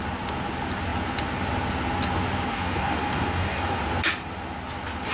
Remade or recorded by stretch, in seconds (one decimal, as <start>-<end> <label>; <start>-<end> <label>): 0.0-2.5 recorded; 2.5-3.8 remade; 3.8-5.1 recorded

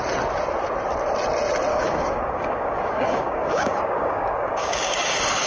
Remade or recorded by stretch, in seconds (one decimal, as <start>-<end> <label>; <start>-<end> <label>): 0.0-1.7 recorded; 1.7-5.0 remade; 5.0-5.5 recorded

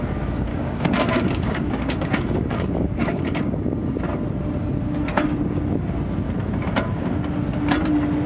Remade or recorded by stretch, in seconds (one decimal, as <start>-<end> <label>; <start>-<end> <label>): 0.0-0.5 recorded; 0.5-4.0 remade; 4.0-8.3 recorded

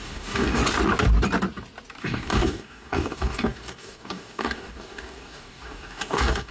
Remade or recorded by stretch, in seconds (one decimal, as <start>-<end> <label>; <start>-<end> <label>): 0.0-0.6 remade; 0.6-2.0 recorded; 2.0-6.5 remade

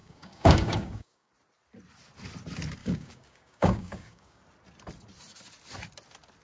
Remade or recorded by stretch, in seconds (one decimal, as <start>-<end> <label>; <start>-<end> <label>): 0.0-1.3 remade; 1.3-2.8 recorded; 2.8-4.4 remade; 4.4-6.4 recorded

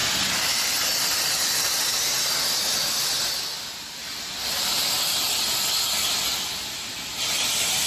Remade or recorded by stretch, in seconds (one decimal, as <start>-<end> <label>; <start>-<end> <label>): 0.0-7.9 recorded

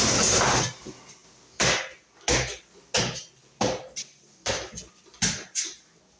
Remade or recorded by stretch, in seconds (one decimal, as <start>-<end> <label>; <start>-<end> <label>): 0.0-6.2 recorded

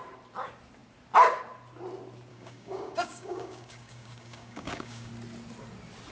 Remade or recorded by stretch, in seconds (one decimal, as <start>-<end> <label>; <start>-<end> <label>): 0.0-2.3 recorded; 2.3-5.1 remade; 5.1-6.1 recorded